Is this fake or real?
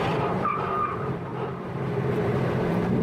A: fake